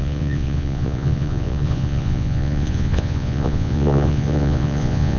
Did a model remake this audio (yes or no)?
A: yes